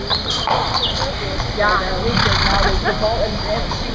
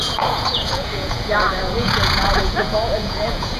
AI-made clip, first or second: second